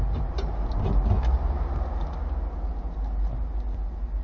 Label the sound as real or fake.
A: real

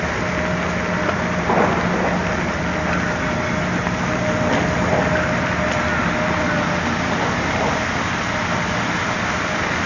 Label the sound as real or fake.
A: real